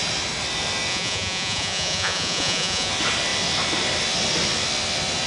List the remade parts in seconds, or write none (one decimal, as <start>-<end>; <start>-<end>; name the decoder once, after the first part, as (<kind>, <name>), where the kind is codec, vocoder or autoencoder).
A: 0.9-2.9 (vocoder, Vocos)